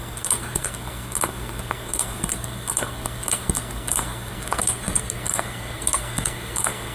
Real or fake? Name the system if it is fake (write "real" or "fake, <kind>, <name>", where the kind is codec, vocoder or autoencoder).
fake, codec, SNAC